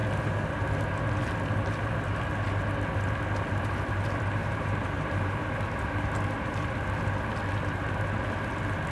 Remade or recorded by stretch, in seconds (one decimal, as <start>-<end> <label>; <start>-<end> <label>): 0.0-4.4 recorded; 4.4-5.5 remade; 5.5-8.9 recorded